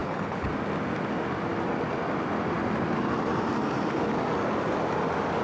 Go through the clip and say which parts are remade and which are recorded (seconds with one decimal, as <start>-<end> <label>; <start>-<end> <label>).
0.0-0.5 remade; 0.5-5.4 recorded